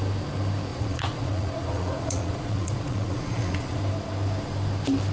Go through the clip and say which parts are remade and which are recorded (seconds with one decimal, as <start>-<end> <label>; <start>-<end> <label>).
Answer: 0.0-0.7 recorded; 0.7-3.8 remade; 3.8-5.1 recorded